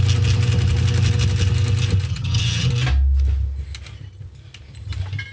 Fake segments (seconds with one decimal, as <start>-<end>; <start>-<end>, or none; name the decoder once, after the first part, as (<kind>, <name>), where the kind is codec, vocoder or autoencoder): 2.1-2.7 (vocoder, HiFi-GAN)